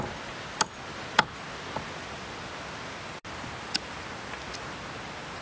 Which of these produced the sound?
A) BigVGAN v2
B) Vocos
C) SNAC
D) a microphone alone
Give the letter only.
D